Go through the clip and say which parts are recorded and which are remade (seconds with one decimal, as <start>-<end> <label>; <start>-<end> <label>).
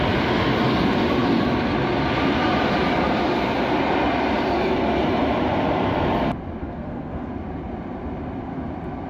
0.0-6.6 recorded; 6.6-7.3 remade; 7.3-9.1 recorded